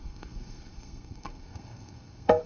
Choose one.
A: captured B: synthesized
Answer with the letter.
B